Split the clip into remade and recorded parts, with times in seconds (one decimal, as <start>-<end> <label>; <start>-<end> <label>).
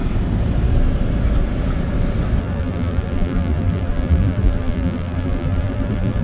0.0-2.4 recorded; 2.4-6.2 remade